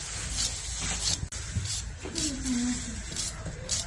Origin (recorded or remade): recorded